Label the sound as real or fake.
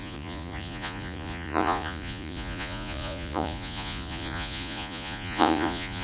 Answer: fake